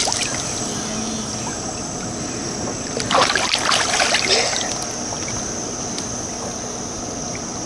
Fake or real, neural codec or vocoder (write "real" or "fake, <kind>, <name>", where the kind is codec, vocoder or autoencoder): real